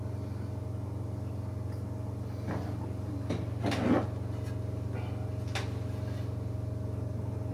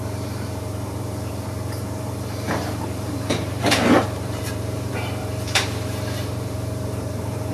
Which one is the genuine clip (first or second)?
first